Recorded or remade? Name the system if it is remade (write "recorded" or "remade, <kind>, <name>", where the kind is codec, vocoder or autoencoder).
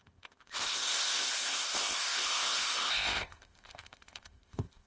remade, codec, ZipCodec